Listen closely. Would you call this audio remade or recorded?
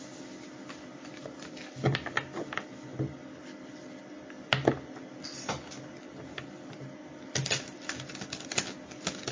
recorded